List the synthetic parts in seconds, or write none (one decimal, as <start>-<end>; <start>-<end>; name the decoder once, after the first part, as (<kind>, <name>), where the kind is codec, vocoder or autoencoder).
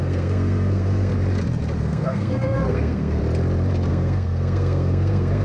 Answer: 0.0-1.1 (codec, SNAC); 1.8-3.2; 3.9-5.4